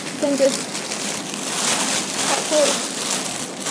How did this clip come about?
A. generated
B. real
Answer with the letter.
A